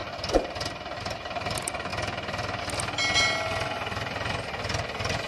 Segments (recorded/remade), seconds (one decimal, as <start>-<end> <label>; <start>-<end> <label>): 0.0-5.3 recorded